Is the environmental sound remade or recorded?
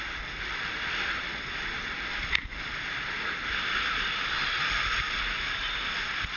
recorded